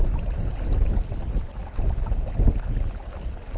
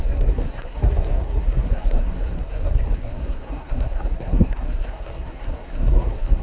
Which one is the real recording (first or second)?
first